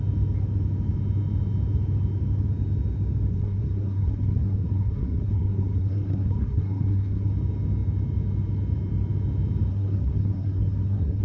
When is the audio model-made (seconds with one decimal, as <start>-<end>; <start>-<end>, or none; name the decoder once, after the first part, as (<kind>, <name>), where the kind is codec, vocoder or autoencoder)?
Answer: 3.3-7.3 (codec, SNAC); 9.7-11.2